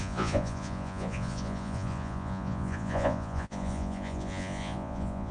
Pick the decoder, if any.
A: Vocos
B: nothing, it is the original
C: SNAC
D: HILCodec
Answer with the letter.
A